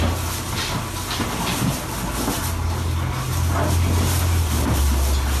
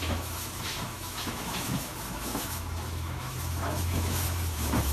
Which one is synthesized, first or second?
second